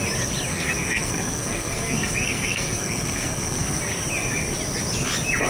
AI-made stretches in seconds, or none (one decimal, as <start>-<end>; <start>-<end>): 0.5-3.8